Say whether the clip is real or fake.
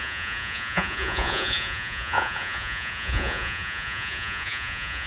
fake